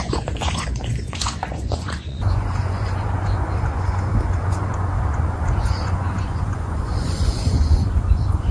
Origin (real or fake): fake